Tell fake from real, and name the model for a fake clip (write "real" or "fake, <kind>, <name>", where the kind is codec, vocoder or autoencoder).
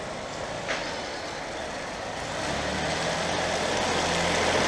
real